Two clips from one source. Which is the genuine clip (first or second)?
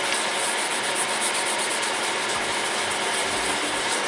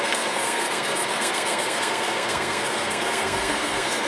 first